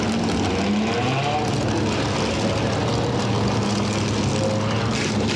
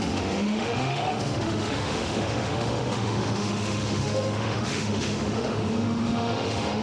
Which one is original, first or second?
first